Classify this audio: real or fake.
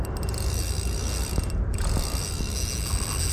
real